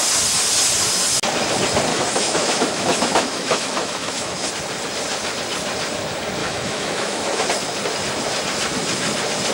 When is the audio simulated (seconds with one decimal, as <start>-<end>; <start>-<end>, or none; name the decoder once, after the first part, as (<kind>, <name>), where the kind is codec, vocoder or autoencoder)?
1.9-4.5 (autoencoder, DAC-VAE); 6.4-7.5